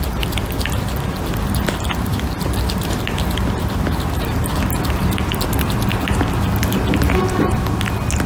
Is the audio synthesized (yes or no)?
no